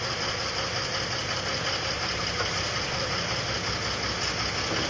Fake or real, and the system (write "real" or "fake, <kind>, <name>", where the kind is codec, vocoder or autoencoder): real